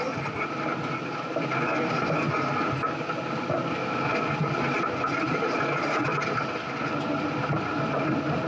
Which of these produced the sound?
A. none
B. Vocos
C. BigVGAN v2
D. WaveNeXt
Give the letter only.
A